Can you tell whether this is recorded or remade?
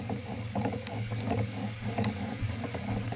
remade